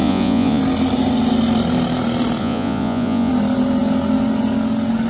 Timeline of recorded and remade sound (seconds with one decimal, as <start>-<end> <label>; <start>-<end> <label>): 0.0-0.6 remade; 0.6-2.4 recorded; 2.4-3.3 remade; 3.3-5.1 recorded